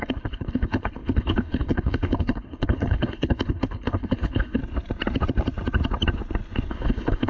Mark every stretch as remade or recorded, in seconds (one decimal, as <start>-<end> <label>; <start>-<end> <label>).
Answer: 0.0-4.6 remade; 4.6-6.7 recorded; 6.7-7.3 remade